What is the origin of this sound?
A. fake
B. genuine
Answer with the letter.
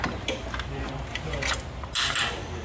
B